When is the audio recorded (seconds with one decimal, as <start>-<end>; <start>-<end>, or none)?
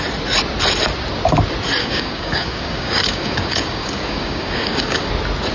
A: 0.0-1.8; 5.1-5.5